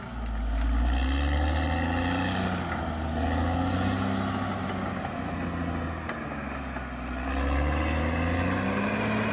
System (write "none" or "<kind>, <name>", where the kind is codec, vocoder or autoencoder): none